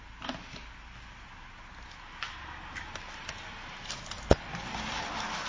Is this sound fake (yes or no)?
no